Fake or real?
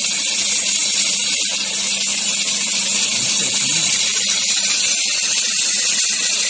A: real